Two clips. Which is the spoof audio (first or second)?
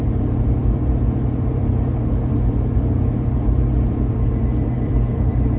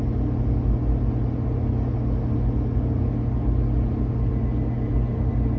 first